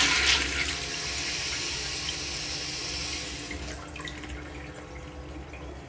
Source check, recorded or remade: recorded